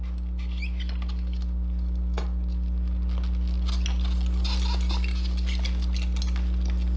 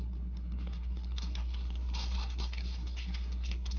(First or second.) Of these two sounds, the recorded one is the first